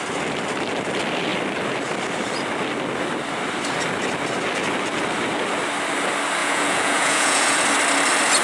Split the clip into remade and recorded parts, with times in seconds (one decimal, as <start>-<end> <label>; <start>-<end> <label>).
0.0-6.4 recorded; 6.4-7.6 remade; 7.6-8.4 recorded